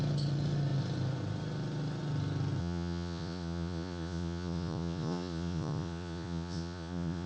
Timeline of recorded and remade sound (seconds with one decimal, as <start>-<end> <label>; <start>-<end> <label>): 0.0-2.6 recorded; 2.6-7.3 remade